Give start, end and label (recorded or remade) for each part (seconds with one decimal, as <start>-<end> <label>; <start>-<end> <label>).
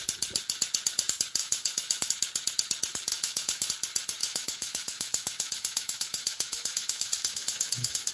0.0-1.4 recorded; 1.4-2.1 remade; 2.1-3.1 recorded; 3.1-3.7 remade; 3.7-4.2 recorded; 4.2-8.1 remade